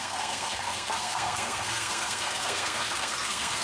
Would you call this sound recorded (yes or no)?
no